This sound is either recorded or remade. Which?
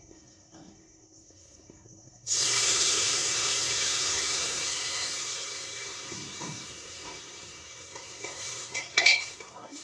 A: remade